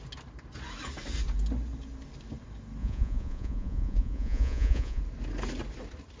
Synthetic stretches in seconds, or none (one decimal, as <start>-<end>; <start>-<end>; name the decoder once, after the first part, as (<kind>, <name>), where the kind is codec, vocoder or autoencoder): 2.8-5.0 (vocoder, Vocos)